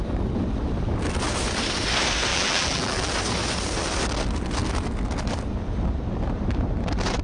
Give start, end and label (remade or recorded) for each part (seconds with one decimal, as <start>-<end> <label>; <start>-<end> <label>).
0.0-2.3 recorded; 2.3-3.1 remade; 3.1-7.2 recorded